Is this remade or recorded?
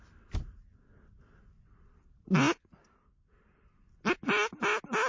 recorded